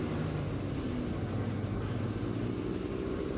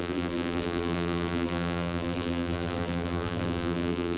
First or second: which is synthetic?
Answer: second